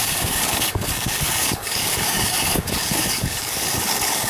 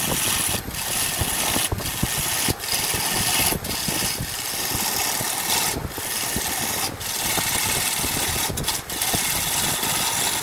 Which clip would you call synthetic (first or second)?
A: first